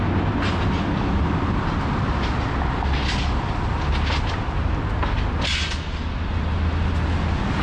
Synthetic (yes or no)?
no